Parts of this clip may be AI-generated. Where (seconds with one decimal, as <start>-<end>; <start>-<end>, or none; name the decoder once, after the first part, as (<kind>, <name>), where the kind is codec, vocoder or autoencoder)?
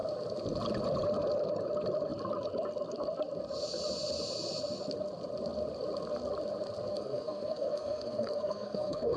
6.9-9.2 (codec, SNAC)